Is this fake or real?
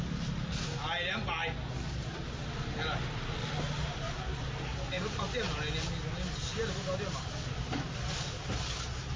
real